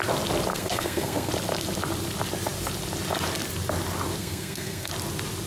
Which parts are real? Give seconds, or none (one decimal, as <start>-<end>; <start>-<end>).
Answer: 0.0-0.5; 1.3-4.2; 4.9-5.5